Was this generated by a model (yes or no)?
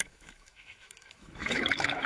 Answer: yes